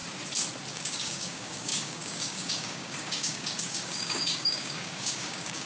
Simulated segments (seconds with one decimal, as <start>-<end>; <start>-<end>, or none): 0.7-5.7